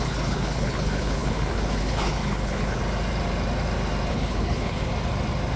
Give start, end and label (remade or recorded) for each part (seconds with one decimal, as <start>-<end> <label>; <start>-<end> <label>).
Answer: 0.0-2.8 remade; 2.8-4.1 recorded; 4.1-4.9 remade; 4.9-5.6 recorded